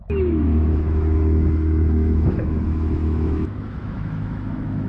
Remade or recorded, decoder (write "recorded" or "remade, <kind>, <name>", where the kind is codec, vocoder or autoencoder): remade, autoencoder, DAC-VAE